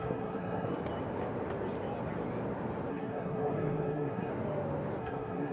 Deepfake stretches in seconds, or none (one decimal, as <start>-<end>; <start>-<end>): 0.0-0.7; 2.9-4.3; 5.0-5.5